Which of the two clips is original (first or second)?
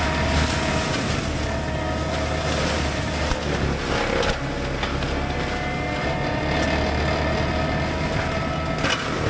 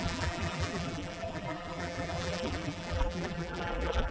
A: first